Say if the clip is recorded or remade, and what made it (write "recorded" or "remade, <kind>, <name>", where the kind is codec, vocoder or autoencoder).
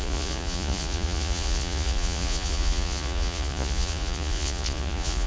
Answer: remade, vocoder, Vocos